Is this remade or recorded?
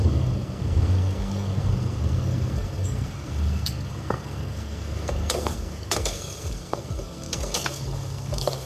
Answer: remade